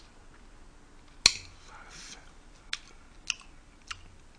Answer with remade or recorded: recorded